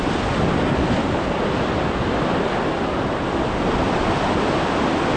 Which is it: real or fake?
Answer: real